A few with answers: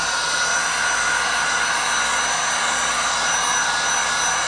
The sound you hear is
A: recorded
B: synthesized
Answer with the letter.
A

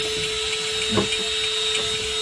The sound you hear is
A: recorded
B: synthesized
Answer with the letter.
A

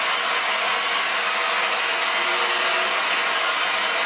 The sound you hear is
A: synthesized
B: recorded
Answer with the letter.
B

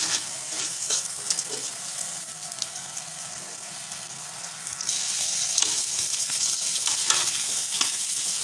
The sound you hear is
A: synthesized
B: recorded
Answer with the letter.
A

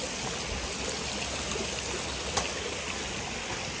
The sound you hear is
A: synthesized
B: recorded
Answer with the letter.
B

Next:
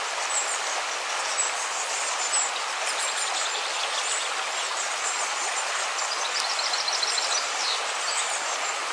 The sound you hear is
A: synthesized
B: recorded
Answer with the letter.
B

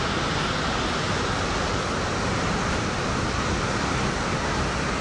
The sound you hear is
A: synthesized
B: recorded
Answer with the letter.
B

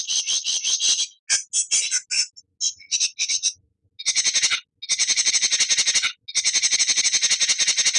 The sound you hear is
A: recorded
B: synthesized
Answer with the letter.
A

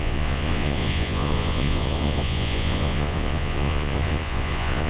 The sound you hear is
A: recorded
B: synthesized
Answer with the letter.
B